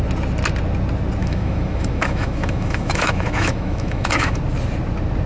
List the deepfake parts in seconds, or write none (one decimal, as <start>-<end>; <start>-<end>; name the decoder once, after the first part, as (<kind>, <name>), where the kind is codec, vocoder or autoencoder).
1.2-4.4 (autoencoder, DAC-VAE)

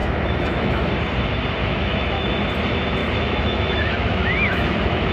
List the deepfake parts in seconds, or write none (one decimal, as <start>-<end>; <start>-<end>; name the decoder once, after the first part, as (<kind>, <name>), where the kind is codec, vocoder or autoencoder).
0.0-0.9 (autoencoder, DAC-VAE); 1.6-2.3; 3.0-5.1

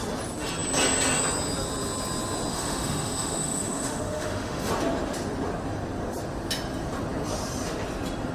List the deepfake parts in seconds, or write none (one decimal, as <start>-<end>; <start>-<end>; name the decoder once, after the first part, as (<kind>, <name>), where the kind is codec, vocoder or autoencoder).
2.5-4.7 (autoencoder, DAC-VAE)